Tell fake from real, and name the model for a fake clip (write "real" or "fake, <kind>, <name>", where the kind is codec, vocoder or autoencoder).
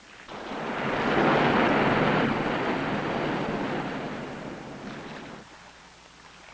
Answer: real